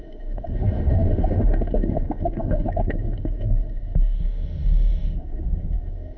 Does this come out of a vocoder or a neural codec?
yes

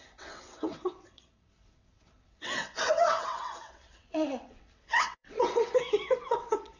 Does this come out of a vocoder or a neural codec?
yes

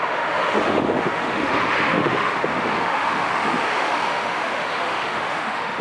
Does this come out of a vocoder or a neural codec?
yes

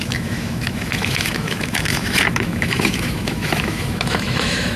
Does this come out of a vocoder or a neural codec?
yes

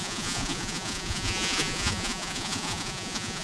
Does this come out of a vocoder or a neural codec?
yes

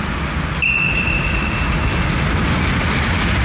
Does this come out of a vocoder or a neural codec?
no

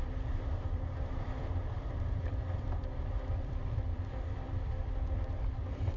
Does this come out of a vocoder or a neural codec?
yes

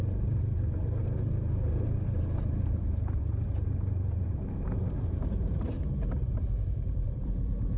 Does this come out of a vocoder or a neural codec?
yes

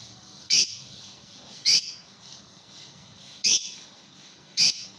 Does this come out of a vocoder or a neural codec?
yes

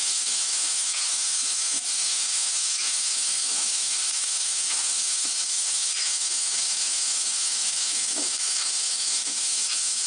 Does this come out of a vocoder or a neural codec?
yes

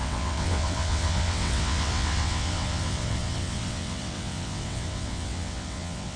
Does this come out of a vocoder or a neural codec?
yes